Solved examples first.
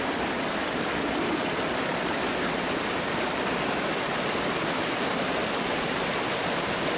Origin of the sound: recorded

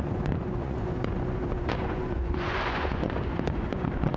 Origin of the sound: remade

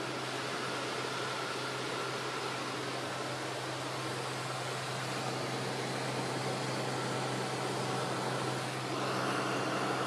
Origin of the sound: recorded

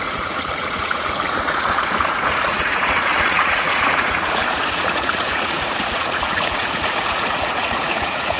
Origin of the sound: remade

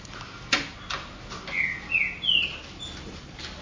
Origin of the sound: recorded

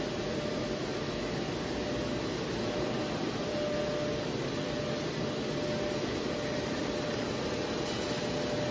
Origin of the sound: recorded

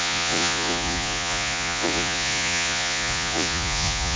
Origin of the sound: remade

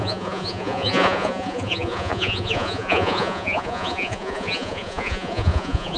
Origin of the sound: remade